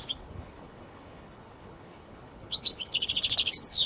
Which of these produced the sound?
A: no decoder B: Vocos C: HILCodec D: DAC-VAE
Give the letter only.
C